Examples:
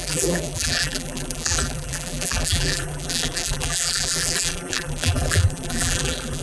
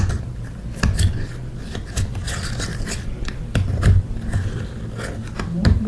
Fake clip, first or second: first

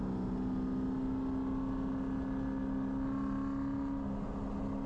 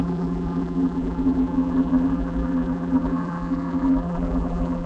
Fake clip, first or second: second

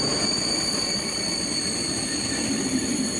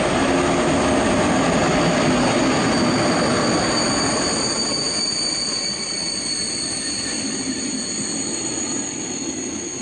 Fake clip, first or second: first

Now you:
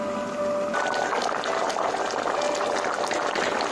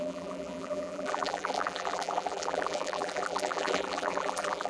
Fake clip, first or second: second